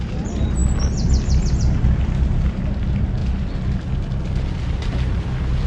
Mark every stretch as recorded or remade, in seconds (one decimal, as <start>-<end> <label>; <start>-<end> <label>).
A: 0.0-5.7 recorded